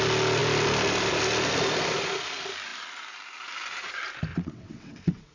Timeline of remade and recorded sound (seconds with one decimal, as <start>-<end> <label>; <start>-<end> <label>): 0.0-4.3 recorded; 4.3-5.3 remade